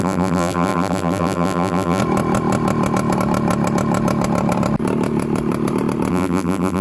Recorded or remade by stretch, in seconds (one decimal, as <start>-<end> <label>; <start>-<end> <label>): 0.0-2.0 remade; 2.0-6.1 recorded; 6.1-6.8 remade

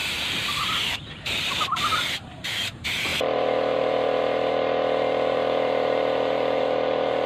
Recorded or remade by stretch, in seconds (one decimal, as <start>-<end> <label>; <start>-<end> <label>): 0.0-7.3 remade

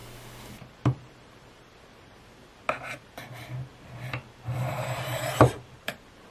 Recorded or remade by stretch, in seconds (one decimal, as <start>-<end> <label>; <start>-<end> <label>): 0.0-1.9 recorded; 1.9-2.5 remade; 2.5-3.0 recorded; 3.0-3.7 remade; 3.7-4.7 recorded; 4.7-6.3 remade